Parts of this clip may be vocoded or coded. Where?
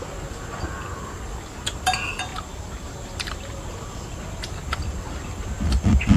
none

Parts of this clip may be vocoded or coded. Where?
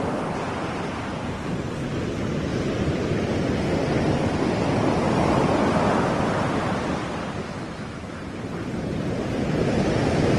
none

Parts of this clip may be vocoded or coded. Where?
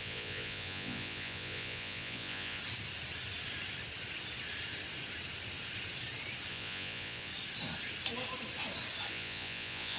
0.0-2.6; 6.5-7.3; 9.1-10.0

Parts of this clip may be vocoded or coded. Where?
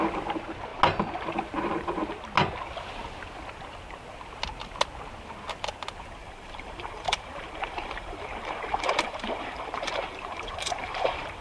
6.2-11.4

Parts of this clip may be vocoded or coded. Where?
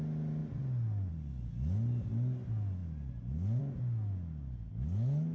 none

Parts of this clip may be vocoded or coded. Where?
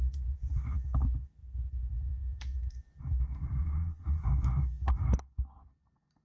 3.6-4.2